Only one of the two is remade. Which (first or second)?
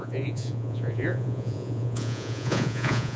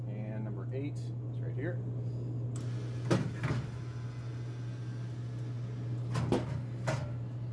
first